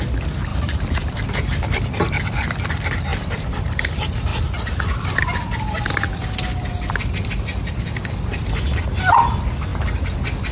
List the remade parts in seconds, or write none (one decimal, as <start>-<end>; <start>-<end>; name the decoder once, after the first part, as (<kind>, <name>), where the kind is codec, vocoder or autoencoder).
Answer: 0.5-1.3 (vocoder, BigVGAN v2); 3.1-3.9; 4.3-5.2